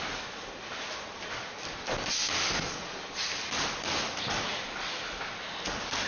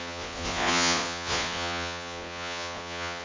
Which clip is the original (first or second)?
first